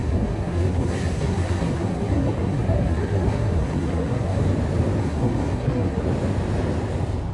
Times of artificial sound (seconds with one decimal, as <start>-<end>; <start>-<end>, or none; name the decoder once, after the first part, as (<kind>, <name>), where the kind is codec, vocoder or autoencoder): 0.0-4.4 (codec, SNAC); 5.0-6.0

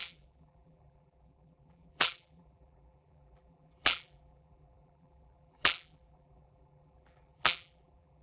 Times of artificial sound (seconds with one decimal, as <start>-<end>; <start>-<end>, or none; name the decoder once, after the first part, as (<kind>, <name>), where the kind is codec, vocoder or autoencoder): 0.0-8.2 (vocoder, BigVGAN v2)

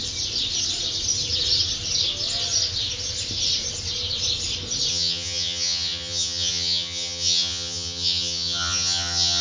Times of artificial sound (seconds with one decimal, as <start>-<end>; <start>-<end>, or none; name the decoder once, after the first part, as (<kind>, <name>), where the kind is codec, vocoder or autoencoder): 4.9-9.4 (vocoder, HiFi-GAN)

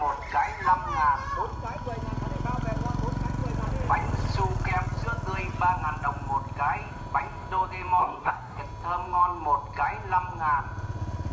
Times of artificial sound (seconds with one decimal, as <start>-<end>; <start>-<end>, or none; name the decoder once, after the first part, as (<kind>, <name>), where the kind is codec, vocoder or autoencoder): 8.0-8.6 (codec, SNAC)

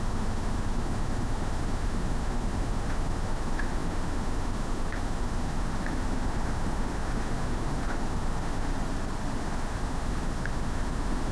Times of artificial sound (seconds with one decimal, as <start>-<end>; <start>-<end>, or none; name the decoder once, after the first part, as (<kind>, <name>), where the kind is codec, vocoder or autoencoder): 0.0-8.7 (autoencoder, DAC-VAE); 9.4-11.3

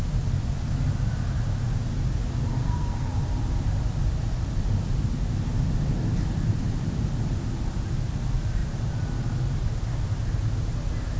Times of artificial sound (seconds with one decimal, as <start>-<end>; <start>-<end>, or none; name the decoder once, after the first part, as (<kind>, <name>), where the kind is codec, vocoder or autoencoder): 2.5-3.1 (codec, SNAC)

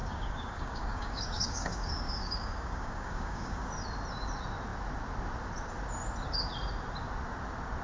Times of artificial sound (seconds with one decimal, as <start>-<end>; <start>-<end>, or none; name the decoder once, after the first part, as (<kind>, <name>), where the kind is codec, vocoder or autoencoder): 0.0-3.7 (codec, DAC)

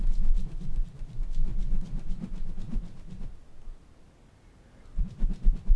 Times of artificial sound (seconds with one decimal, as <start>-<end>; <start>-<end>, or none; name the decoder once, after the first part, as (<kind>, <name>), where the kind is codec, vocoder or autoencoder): none